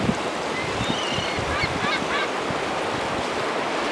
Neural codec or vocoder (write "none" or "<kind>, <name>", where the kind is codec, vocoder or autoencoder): none